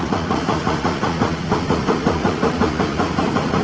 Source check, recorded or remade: remade